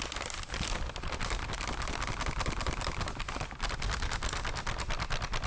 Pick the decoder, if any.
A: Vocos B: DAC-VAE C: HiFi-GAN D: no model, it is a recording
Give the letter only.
D